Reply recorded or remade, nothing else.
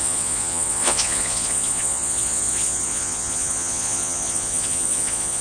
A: remade